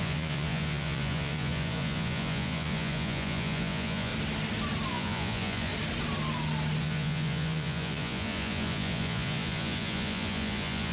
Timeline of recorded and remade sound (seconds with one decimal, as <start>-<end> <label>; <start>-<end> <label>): 0.0-4.1 remade; 4.1-4.9 recorded; 4.9-5.7 remade; 5.7-6.8 recorded; 6.8-10.9 remade